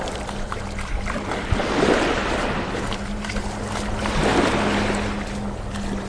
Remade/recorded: recorded